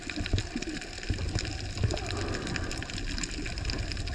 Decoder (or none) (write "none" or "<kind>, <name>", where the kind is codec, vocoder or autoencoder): none